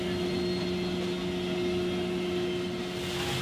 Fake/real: real